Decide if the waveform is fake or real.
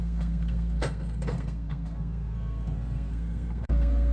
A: fake